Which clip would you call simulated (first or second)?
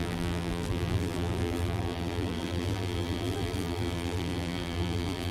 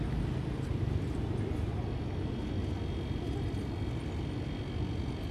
first